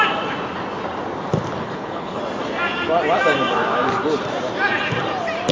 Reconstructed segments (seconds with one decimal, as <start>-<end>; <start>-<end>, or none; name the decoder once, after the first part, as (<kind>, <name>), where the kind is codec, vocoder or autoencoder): 1.6-2.2 (codec, HILCodec)